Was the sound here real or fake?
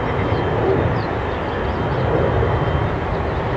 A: real